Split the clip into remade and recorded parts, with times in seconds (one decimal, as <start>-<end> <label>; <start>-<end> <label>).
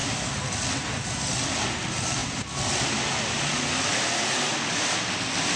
0.0-5.6 recorded